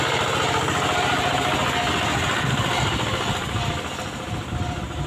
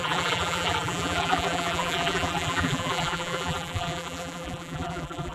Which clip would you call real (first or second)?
first